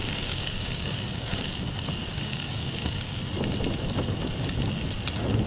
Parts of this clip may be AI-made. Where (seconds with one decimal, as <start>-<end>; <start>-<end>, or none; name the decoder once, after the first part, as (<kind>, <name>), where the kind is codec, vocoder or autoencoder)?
0.0-1.5 (codec, DAC); 2.1-3.2